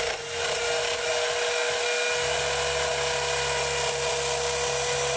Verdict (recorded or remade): recorded